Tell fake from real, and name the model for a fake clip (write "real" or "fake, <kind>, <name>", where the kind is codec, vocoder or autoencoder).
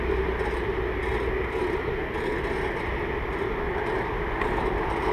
real